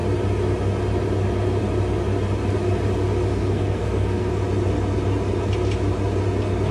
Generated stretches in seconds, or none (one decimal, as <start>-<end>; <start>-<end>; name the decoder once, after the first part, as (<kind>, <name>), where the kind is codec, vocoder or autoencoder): 3.3-4.3 (codec, SNAC)